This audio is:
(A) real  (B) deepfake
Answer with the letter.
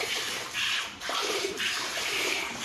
B